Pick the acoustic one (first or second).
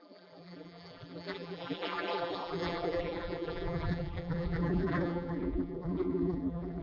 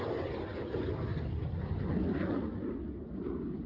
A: second